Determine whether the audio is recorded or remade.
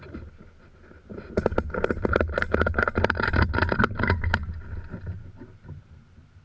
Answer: recorded